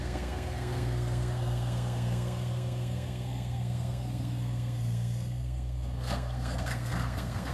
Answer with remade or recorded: remade